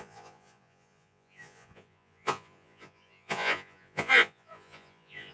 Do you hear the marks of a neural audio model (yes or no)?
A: yes